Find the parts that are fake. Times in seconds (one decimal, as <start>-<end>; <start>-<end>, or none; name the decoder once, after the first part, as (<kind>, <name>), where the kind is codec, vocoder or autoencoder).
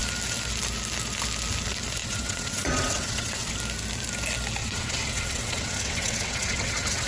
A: 2.0-3.5 (vocoder, WaveNeXt); 4.6-7.1